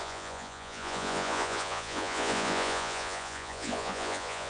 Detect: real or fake fake